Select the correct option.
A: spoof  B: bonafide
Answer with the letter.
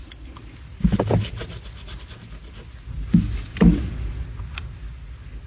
B